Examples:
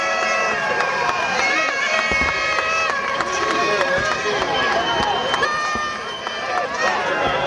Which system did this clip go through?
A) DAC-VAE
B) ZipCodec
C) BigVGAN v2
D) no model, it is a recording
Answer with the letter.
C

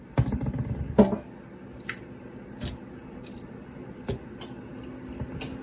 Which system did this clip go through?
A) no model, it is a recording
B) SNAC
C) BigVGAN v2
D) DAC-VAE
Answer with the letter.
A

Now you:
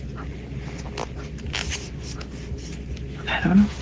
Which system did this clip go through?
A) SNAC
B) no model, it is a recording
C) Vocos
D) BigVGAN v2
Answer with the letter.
B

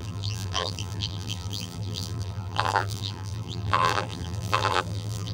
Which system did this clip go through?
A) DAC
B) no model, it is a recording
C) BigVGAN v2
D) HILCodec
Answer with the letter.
C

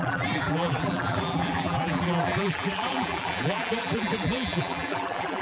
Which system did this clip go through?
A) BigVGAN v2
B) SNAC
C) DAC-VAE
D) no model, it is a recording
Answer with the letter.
A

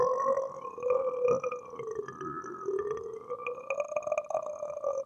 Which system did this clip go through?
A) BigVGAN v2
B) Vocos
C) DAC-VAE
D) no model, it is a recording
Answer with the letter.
D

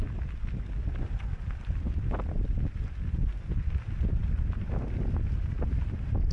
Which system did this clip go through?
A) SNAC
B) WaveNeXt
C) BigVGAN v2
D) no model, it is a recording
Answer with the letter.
D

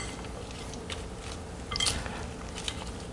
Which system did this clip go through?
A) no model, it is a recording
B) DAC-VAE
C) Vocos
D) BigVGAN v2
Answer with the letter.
A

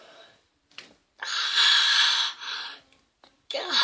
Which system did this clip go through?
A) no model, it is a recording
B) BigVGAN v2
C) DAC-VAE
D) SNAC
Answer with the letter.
B